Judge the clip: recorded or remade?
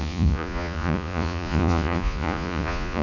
remade